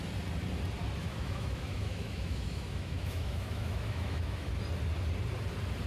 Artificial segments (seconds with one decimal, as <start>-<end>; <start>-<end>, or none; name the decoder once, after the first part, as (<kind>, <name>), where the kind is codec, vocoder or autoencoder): 1.0-4.5 (autoencoder, DAC-VAE)